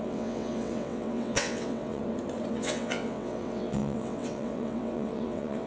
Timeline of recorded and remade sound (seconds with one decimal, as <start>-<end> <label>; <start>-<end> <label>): 0.0-2.0 remade; 2.0-2.5 recorded; 2.5-5.7 remade